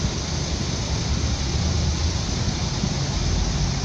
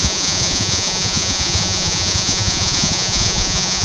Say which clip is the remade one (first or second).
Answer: second